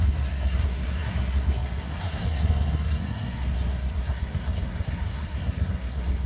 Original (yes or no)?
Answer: no